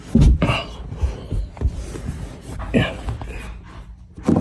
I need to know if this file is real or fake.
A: real